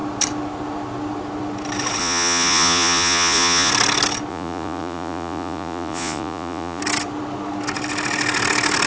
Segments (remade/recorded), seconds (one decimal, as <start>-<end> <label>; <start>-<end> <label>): 0.0-2.0 recorded; 2.0-3.7 remade; 3.7-4.3 recorded; 4.3-6.8 remade; 6.8-8.9 recorded